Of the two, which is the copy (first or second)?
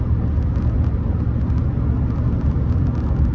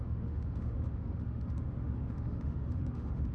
second